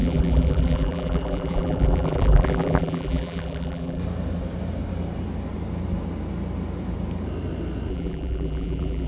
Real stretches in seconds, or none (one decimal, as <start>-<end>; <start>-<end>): 4.0-7.9